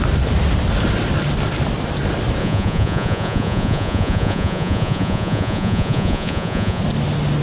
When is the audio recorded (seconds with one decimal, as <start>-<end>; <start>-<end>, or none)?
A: 0.0-2.4; 6.8-7.4